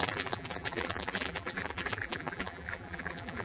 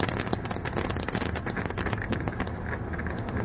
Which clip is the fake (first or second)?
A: first